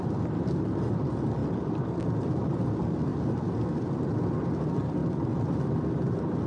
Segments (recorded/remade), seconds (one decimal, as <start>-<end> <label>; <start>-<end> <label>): 0.0-6.5 recorded